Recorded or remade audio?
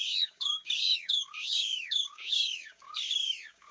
remade